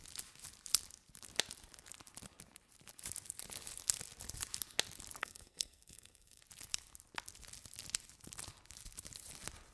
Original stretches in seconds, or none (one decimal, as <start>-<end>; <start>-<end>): 0.0-5.2; 6.4-9.7

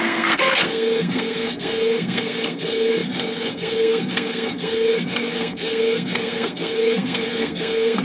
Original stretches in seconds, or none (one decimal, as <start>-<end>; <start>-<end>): none